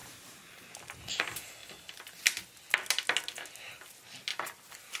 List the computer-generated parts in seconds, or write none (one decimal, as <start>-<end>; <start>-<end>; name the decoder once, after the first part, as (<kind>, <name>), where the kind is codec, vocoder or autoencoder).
0.0-1.2 (vocoder, BigVGAN v2); 4.3-5.0